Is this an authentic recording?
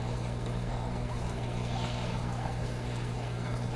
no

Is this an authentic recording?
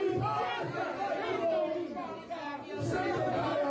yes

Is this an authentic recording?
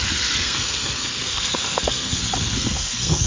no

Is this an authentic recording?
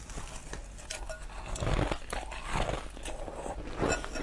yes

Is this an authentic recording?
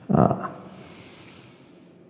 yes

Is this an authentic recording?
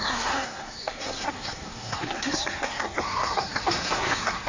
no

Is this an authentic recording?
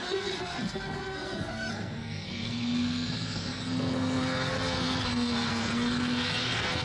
no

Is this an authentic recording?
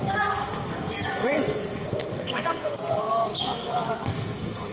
no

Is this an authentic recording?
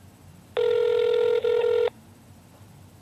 yes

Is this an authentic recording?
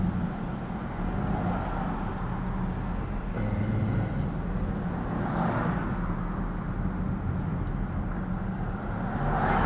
yes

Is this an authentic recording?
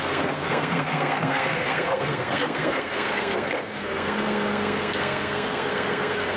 no